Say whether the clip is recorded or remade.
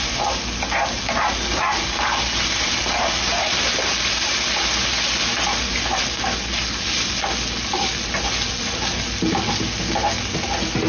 recorded